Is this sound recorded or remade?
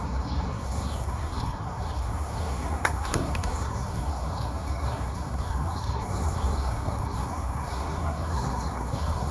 remade